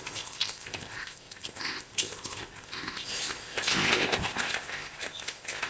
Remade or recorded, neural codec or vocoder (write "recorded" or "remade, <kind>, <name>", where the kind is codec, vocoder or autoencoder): remade, codec, ZipCodec